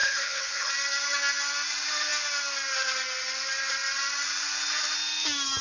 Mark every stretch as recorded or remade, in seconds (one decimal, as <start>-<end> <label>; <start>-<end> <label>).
0.0-0.7 remade; 0.7-5.6 recorded